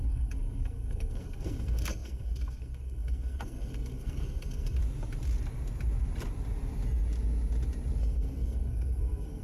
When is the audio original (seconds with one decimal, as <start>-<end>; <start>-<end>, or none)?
4.8-8.0